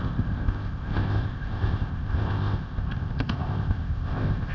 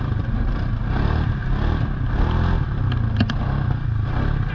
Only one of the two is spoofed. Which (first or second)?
first